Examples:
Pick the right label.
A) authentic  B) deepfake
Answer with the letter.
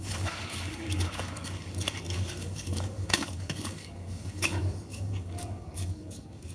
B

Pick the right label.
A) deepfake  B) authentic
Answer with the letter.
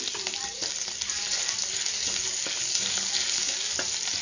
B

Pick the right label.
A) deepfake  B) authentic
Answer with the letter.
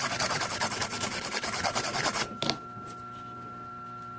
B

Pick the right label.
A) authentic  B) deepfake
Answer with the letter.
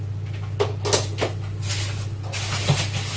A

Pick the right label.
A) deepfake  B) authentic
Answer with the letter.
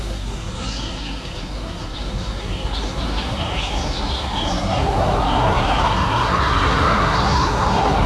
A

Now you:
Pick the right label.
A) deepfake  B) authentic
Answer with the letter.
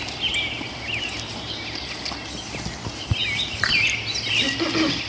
B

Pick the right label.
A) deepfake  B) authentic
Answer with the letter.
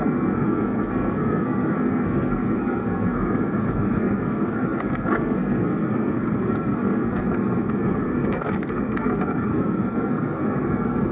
A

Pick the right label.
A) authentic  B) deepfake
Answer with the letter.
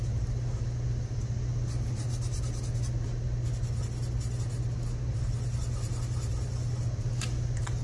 A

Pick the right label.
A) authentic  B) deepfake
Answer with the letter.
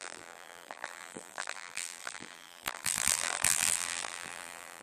B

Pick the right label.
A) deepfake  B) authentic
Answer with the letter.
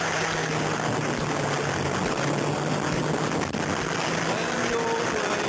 B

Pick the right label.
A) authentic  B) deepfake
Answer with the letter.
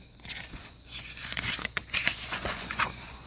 B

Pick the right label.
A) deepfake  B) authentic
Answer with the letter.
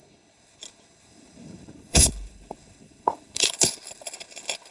A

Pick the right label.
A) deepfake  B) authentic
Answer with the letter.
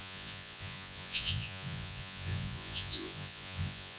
A